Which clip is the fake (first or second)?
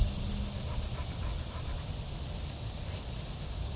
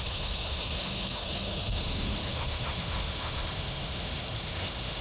second